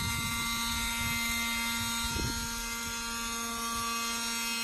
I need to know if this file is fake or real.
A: real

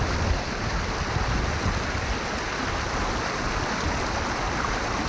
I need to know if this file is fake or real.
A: real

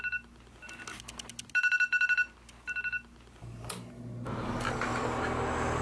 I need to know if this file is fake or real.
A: real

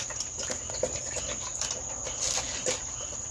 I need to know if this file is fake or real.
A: real